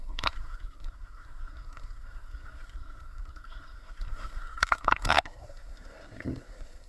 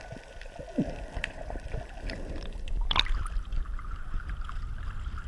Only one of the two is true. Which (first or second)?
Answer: second